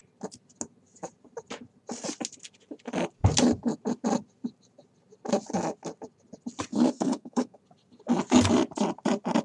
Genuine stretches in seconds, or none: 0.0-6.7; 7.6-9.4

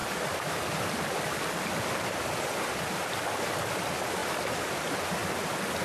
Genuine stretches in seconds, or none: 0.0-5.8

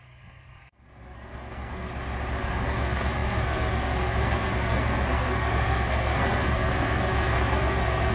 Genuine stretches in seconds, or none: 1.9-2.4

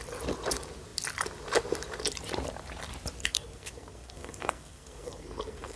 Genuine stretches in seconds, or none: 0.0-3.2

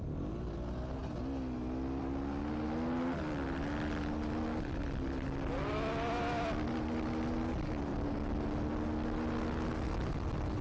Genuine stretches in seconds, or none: 0.0-10.6

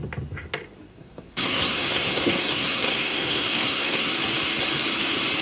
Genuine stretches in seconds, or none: 0.0-0.9; 4.1-5.4

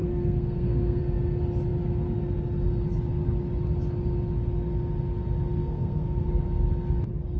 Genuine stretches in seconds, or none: 1.0-5.6; 6.3-7.4

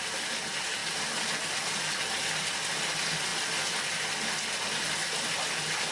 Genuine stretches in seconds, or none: 0.0-5.9